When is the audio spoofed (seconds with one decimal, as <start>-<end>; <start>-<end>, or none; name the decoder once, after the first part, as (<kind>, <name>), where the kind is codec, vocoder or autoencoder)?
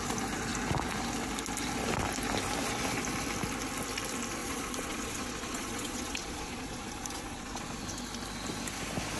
4.4-7.8 (vocoder, Vocos)